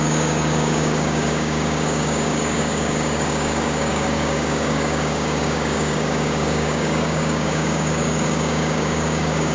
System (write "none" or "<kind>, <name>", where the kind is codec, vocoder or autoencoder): codec, DAC